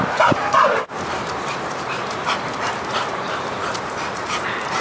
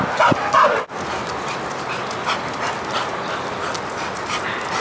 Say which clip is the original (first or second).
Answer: second